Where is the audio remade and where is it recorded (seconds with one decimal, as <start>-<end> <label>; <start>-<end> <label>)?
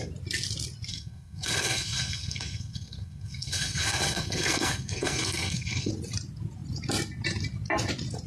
0.0-0.9 recorded; 0.9-5.9 remade; 5.9-8.3 recorded